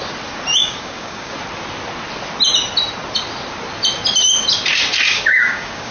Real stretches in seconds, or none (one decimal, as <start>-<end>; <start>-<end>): 0.0-0.6; 1.3-5.1